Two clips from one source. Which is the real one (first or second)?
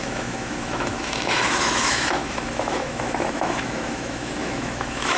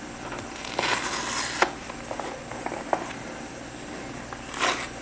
second